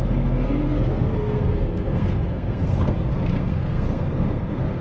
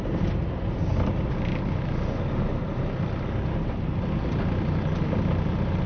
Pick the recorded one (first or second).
second